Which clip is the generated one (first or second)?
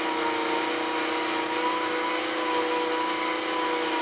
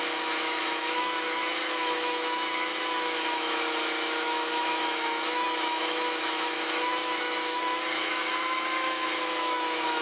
second